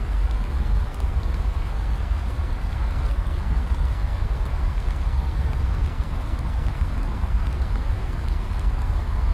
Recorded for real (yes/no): no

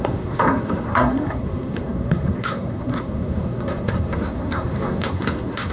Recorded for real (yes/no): no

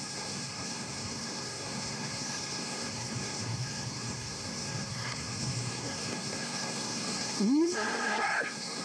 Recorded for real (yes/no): no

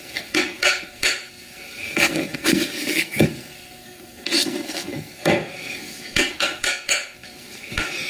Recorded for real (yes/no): no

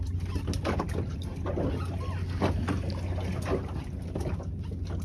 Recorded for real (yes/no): yes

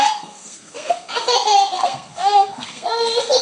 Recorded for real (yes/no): no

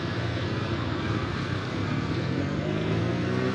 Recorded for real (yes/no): no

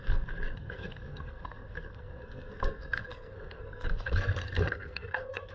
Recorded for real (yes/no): no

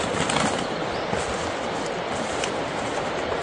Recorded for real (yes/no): yes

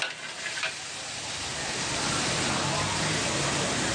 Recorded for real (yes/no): yes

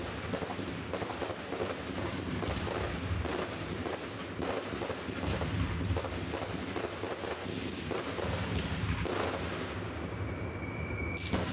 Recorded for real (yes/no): yes